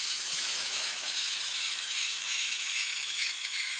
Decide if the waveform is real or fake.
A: fake